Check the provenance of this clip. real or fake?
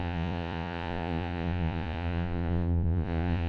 fake